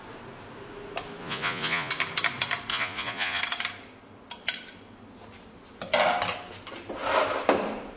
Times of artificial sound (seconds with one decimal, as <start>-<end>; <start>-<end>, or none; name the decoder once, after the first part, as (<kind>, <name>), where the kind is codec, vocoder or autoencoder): 1.2-1.9 (vocoder, Vocos); 2.7-3.4